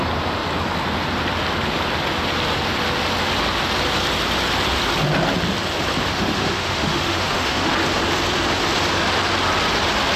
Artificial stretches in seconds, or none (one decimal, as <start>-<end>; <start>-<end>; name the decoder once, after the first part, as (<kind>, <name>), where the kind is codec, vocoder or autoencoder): 6.1-7.7 (autoencoder, DAC-VAE)